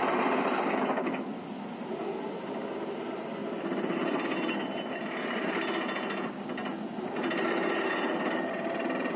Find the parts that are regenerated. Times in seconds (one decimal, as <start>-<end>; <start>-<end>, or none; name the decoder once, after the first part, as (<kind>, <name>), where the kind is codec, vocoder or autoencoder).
none